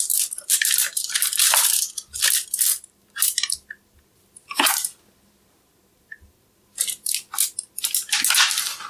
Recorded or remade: recorded